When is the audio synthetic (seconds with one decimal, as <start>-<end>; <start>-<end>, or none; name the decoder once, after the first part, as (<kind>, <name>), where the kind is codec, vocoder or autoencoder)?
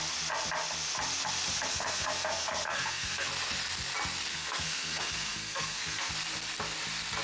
1.7-3.3 (codec, SNAC); 4.3-6.1